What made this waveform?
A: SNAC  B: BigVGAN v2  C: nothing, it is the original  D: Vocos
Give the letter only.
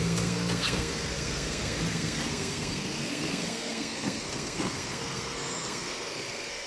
A